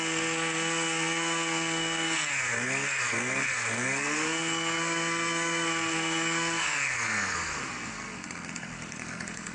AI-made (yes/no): yes